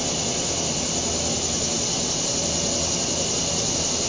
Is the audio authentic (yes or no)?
yes